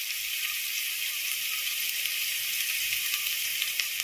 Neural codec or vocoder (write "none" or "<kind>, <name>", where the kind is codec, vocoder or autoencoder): vocoder, BigVGAN v2